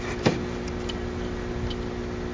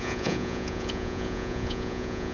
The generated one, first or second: second